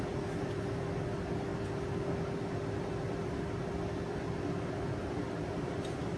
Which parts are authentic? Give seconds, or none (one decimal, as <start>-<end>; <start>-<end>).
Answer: 0.0-6.2